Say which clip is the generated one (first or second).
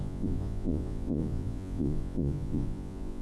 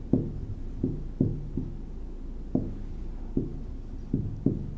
first